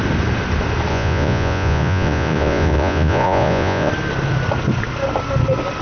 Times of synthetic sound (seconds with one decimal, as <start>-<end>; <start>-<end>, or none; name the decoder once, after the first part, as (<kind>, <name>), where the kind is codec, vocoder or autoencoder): 0.9-3.9 (vocoder, Vocos)